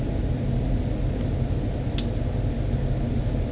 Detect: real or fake real